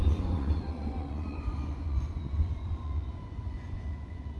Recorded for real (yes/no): no